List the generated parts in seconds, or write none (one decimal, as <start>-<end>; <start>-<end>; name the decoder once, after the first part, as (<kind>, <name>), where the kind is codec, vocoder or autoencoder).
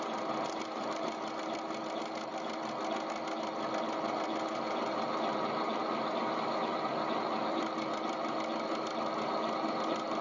none